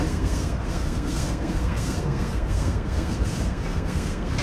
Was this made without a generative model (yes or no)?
no